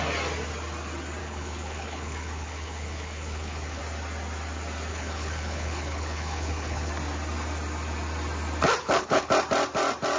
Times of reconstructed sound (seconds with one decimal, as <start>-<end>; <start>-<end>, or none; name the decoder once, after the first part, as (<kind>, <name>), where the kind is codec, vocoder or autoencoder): 1.2-3.8 (codec, HILCodec); 4.9-6.9; 8.8-9.3